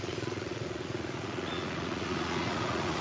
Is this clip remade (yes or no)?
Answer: yes